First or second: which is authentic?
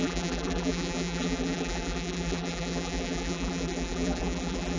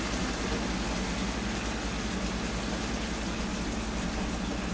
second